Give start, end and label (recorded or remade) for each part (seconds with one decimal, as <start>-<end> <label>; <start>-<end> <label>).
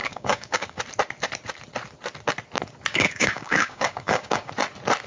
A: 0.0-0.8 remade; 0.8-2.9 recorded; 2.9-4.5 remade; 4.5-5.1 recorded